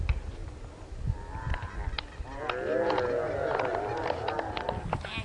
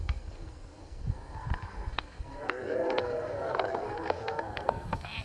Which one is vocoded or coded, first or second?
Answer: second